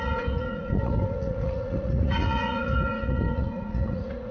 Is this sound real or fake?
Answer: fake